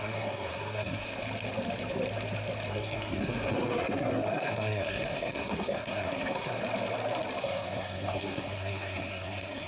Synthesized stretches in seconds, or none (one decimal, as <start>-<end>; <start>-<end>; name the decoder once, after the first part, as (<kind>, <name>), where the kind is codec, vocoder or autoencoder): 0.0-1.1 (codec, SNAC); 2.7-6.6; 7.4-9.7